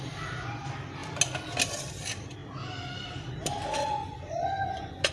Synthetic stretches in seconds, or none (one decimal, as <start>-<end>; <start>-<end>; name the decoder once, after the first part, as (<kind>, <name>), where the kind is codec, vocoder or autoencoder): 4.0-5.1 (vocoder, Vocos)